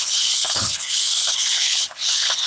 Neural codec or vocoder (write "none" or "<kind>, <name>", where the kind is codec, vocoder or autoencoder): codec, HILCodec